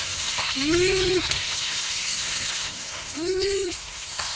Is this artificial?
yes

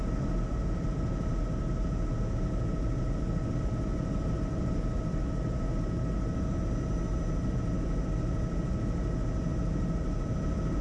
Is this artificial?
no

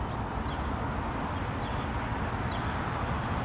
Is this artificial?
no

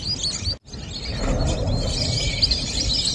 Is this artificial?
no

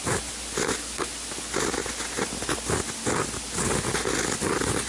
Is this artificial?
no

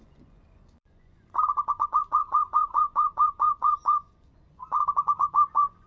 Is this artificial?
yes